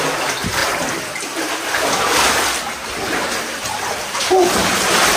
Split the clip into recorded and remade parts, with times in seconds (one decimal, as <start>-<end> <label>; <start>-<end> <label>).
0.0-5.2 recorded